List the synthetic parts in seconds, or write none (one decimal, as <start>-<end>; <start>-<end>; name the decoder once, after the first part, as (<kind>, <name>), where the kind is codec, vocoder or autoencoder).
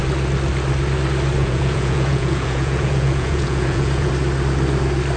1.4-4.1 (vocoder, Vocos)